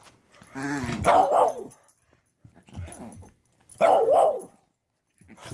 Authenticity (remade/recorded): recorded